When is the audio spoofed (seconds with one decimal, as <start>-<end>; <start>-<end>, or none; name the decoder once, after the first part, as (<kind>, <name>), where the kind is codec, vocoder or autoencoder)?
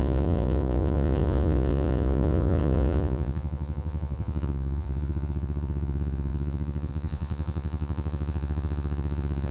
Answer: 0.0-9.5 (vocoder, Vocos)